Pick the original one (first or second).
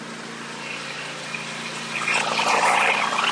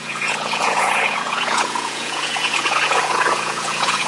first